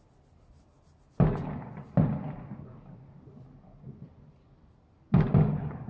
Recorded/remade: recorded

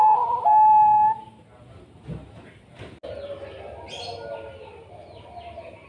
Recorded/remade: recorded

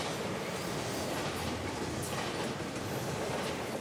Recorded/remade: remade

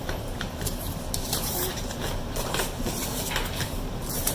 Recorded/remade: remade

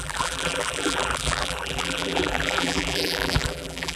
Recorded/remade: remade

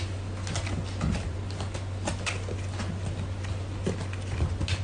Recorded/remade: recorded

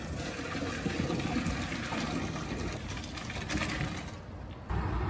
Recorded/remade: recorded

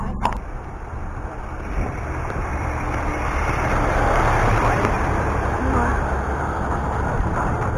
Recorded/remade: remade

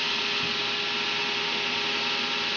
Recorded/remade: recorded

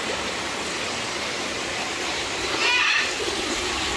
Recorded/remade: recorded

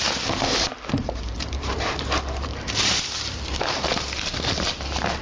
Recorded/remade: remade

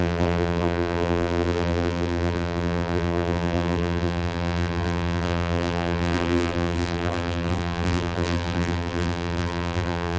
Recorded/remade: remade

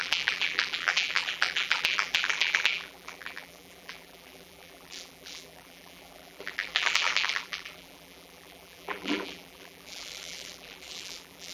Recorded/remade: remade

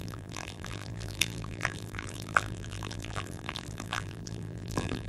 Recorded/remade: remade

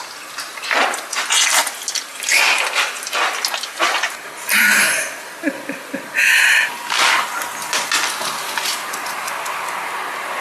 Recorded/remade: recorded